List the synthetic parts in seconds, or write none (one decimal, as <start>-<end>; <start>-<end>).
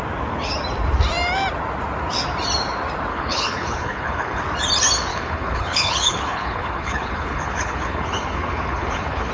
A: 3.1-4.4; 5.1-9.3